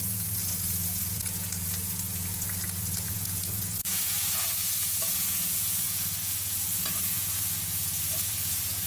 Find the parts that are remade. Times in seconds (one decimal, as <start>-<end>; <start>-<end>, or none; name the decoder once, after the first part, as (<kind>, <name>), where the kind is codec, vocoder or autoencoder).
0.0-8.9 (vocoder, Vocos)